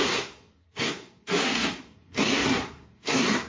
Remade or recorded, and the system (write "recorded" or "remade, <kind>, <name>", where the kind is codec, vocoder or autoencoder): remade, codec, SNAC